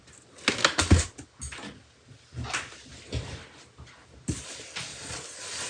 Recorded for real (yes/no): yes